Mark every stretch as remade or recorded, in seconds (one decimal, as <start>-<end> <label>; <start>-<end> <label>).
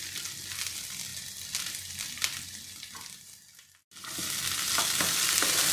0.0-5.7 recorded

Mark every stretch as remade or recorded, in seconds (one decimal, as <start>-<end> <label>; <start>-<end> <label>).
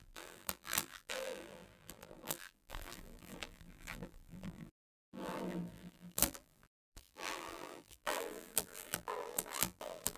0.0-10.2 remade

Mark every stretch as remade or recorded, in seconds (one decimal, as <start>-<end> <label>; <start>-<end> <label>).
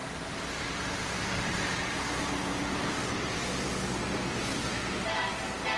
0.0-4.5 recorded; 4.5-5.3 remade; 5.3-5.8 recorded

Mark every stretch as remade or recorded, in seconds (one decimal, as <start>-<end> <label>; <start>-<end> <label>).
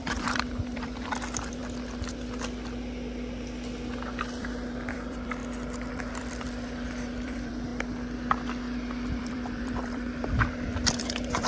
0.0-1.6 remade; 1.6-4.4 recorded; 4.4-5.4 remade; 5.4-5.9 recorded; 5.9-7.7 remade; 7.7-8.6 recorded; 8.6-11.5 remade